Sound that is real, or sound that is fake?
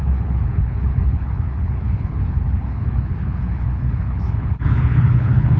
fake